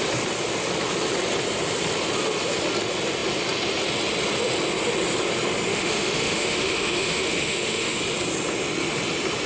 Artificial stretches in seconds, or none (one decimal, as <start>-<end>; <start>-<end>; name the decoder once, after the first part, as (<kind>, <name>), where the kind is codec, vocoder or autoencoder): 5.7-8.0 (autoencoder, DAC-VAE)